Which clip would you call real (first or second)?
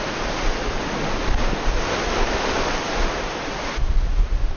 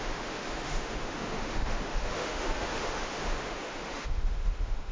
first